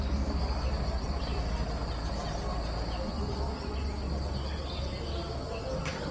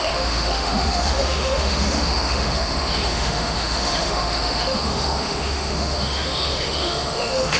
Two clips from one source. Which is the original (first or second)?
first